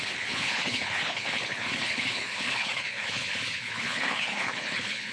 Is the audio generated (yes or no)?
yes